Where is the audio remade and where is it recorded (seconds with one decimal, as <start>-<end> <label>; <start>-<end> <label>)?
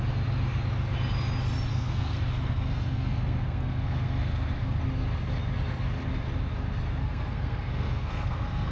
0.0-1.7 recorded; 1.7-4.8 remade; 4.8-7.0 recorded; 7.0-8.7 remade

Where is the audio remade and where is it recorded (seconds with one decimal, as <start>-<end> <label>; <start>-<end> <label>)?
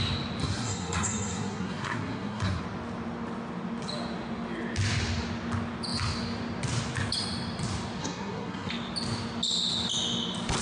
0.0-0.4 recorded; 0.4-2.6 remade; 2.6-8.0 recorded; 8.0-8.7 remade; 8.7-10.6 recorded